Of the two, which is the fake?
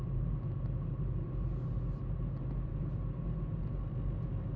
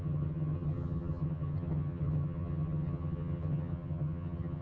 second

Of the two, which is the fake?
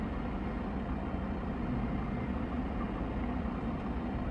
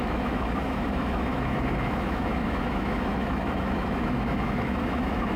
second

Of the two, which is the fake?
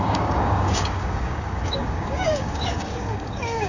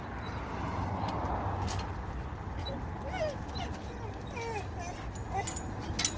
first